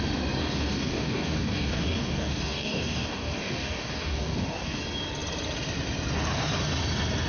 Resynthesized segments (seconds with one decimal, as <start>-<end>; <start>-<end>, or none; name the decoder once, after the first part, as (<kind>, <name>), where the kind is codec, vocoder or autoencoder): 0.4-4.8 (codec, DAC)

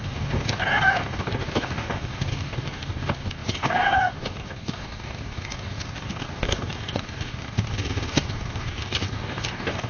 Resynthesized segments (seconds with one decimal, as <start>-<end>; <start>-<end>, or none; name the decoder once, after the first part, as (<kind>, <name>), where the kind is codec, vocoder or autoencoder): 0.0-9.9 (codec, DAC)

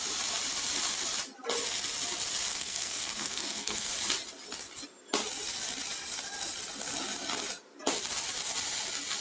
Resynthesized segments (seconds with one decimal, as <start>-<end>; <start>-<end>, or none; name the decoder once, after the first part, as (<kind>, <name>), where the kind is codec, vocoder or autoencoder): 2.5-3.9 (codec, SNAC)

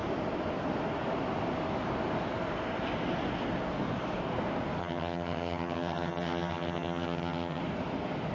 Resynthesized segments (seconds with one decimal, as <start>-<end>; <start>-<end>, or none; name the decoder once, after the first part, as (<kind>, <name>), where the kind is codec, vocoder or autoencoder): 4.8-7.6 (vocoder, HiFi-GAN)

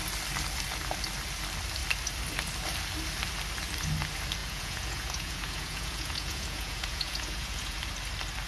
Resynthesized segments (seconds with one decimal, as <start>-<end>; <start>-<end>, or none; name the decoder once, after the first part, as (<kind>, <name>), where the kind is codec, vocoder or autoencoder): 4.4-7.8 (vocoder, Vocos)

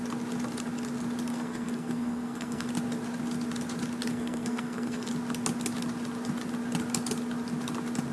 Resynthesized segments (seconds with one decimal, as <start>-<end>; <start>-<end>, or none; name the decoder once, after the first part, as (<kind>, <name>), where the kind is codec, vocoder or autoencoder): 1.3-2.7 (codec, SNAC); 4.1-5.1